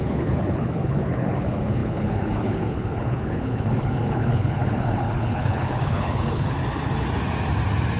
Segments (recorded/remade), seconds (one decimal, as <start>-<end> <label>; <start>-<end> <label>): 0.0-6.6 remade; 6.6-8.0 recorded